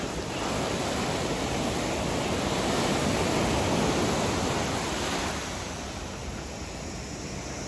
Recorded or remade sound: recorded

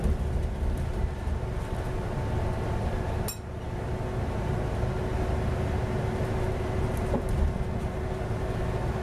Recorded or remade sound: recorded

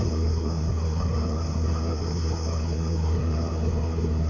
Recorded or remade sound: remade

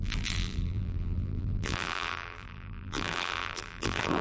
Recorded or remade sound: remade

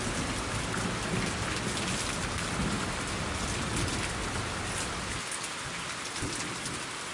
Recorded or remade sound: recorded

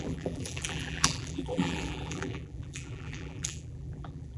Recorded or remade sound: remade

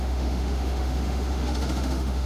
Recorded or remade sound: remade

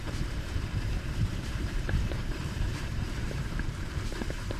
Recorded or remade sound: remade